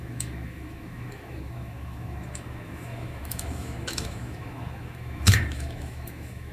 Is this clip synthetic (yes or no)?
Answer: yes